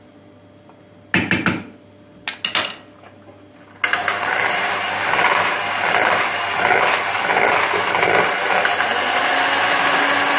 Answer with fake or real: real